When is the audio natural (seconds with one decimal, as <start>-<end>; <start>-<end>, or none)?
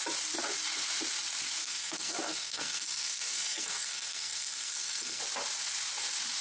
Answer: 0.0-1.6; 5.2-6.4